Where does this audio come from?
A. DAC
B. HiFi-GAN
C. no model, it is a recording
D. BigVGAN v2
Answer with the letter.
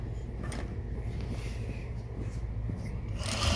C